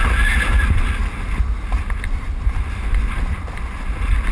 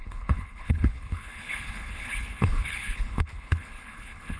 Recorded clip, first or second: first